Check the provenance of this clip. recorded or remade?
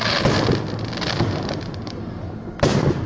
recorded